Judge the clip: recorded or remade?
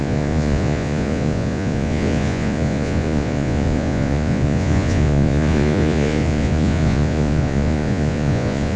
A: remade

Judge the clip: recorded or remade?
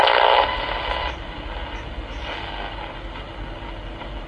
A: recorded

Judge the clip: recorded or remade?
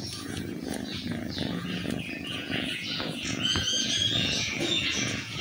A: remade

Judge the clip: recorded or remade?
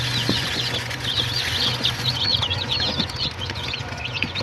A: remade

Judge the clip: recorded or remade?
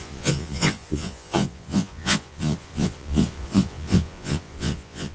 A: remade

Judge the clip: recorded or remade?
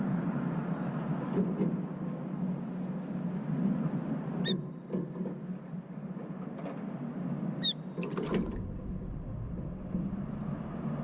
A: recorded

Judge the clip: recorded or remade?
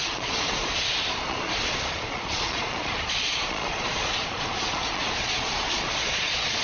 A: remade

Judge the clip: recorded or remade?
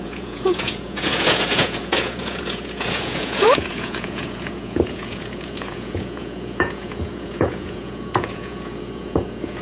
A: remade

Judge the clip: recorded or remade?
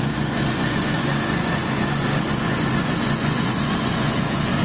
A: remade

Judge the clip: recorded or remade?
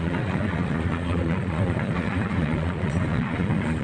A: remade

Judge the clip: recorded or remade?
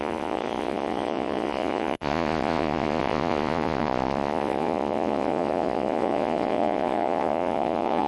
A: remade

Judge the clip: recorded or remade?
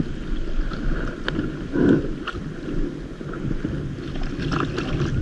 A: recorded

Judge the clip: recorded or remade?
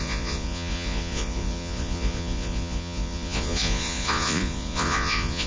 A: remade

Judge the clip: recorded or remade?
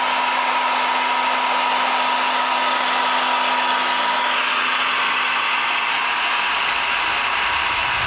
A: recorded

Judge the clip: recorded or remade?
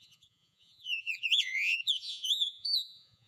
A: remade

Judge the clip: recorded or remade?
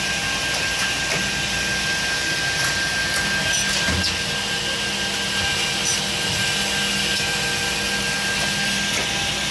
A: recorded